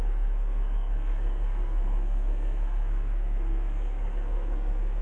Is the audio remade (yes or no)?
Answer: yes